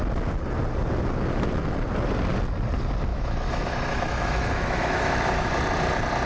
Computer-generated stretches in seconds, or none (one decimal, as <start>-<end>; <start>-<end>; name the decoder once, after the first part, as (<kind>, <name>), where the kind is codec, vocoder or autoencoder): 3.1-5.5 (autoencoder, DAC-VAE)